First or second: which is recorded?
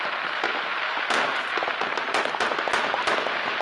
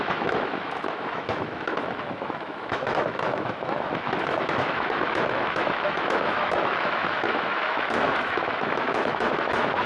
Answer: first